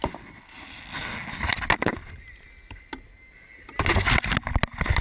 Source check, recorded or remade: recorded